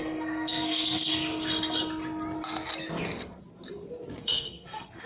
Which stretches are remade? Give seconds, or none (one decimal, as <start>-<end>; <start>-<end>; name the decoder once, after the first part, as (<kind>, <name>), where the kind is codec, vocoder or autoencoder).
0.0-1.1 (codec, SNAC); 4.2-5.1